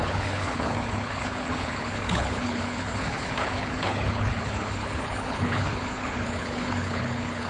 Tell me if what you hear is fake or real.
fake